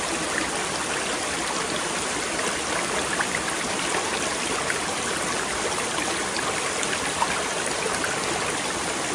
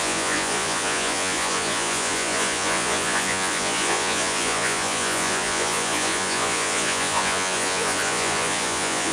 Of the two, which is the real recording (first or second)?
first